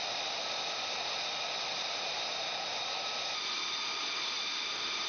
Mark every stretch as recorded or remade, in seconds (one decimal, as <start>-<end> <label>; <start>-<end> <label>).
0.0-5.1 recorded

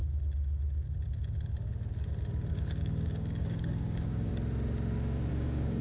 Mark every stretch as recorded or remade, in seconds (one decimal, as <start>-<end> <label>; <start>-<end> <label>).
0.0-2.5 recorded; 2.5-4.3 remade; 4.3-5.3 recorded; 5.3-5.8 remade

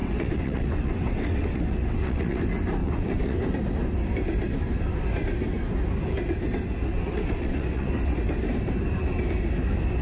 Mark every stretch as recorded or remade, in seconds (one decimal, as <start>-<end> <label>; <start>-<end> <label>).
0.0-2.4 remade; 2.4-2.8 recorded; 2.8-3.4 remade; 3.4-6.9 recorded; 6.9-7.9 remade; 7.9-10.0 recorded

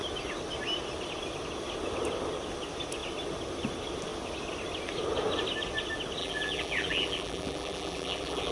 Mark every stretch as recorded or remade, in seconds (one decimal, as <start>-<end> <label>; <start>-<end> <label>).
0.0-6.2 recorded; 6.2-8.5 remade

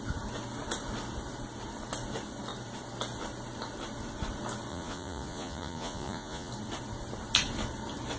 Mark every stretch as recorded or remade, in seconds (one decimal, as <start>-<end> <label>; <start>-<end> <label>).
0.0-4.7 recorded; 4.7-6.5 remade; 6.5-8.2 recorded

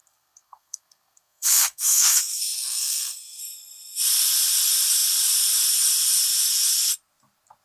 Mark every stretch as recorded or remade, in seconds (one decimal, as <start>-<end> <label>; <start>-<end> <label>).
0.0-3.4 remade; 3.4-7.6 recorded